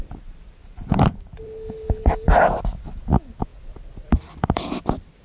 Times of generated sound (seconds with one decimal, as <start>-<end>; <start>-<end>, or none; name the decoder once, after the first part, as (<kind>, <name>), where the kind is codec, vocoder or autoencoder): 0.0-5.2 (vocoder, BigVGAN v2)